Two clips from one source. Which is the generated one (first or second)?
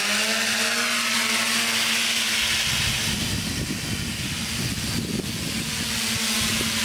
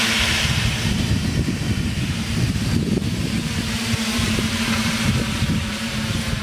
second